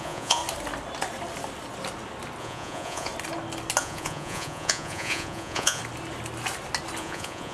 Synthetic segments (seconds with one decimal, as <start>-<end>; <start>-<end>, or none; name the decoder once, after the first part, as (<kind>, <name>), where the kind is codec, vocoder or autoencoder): 0.0-0.4 (vocoder, Vocos); 2.4-3.1; 3.8-5.8; 7.0-7.5